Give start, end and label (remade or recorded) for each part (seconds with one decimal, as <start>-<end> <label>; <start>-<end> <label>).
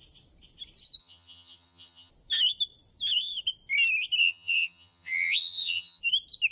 0.0-1.0 recorded; 1.0-2.1 remade; 2.1-4.2 recorded; 4.2-6.0 remade; 6.0-6.5 recorded